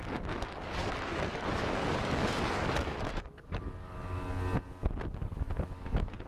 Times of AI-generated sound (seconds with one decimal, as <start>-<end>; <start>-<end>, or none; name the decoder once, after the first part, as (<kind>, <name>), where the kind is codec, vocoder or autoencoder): 0.0-4.2 (codec, DAC); 5.1-6.3